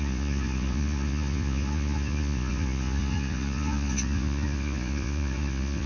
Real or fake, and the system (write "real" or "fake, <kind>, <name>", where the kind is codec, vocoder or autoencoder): fake, vocoder, Vocos